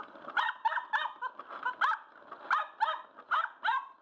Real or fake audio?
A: real